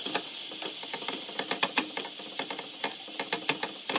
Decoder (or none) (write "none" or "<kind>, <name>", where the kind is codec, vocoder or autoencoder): none